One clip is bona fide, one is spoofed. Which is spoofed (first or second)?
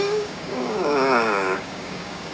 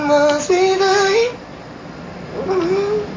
first